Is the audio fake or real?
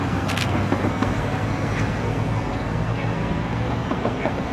fake